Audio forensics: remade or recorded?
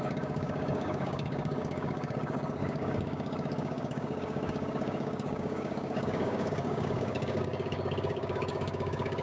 remade